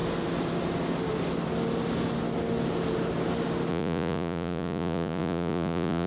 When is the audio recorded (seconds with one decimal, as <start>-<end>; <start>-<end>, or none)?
0.0-3.7